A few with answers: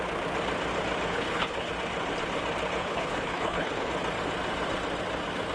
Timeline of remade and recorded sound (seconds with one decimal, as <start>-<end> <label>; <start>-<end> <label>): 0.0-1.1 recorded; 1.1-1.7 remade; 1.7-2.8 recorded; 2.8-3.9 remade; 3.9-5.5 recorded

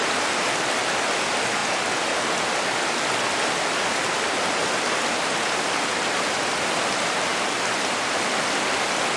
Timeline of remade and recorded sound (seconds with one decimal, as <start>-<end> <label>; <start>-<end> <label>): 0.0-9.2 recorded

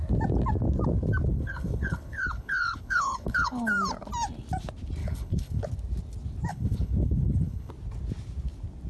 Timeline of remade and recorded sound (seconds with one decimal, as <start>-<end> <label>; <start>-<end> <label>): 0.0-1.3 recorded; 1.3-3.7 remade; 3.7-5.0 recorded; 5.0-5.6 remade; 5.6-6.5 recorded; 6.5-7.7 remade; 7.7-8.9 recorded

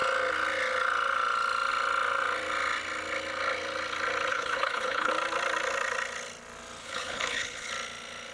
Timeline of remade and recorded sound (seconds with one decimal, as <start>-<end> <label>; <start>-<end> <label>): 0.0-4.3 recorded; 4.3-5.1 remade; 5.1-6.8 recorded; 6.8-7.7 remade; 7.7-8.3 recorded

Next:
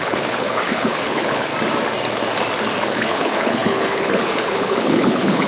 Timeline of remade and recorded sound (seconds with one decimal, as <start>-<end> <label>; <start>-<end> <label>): 0.0-1.5 remade; 1.5-2.8 recorded; 2.8-5.5 remade

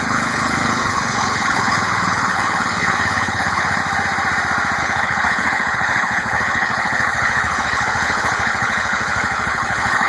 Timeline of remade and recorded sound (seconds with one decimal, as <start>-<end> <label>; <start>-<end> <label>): 0.0-3.8 remade; 3.8-4.8 recorded; 4.8-10.1 remade